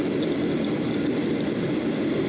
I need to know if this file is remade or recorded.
recorded